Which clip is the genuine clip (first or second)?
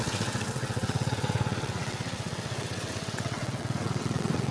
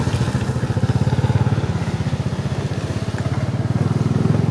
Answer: second